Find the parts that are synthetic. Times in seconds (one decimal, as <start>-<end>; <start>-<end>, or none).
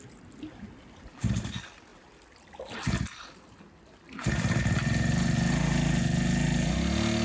none